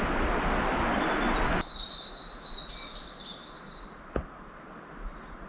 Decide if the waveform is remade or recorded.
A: recorded